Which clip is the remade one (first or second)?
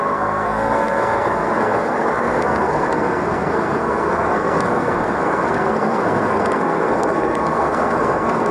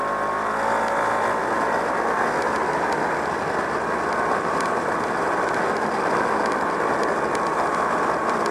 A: first